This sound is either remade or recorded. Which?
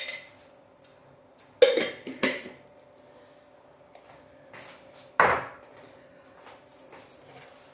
recorded